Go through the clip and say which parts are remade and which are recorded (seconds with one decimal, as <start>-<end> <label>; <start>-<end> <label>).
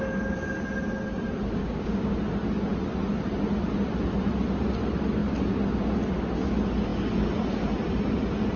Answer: 0.0-1.6 recorded; 1.6-2.1 remade; 2.1-8.6 recorded